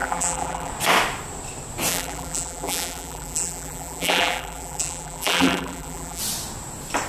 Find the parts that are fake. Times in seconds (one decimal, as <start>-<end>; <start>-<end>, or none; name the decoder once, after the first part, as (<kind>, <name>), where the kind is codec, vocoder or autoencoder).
0.0-0.7 (vocoder, BigVGAN v2); 1.9-6.2